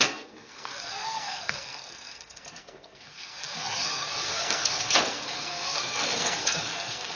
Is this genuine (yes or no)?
no